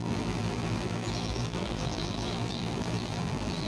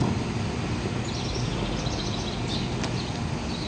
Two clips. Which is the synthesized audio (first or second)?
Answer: first